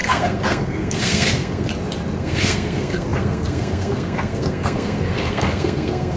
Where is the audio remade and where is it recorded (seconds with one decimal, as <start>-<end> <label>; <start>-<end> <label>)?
0.0-1.7 remade; 1.7-2.2 recorded; 2.2-6.2 remade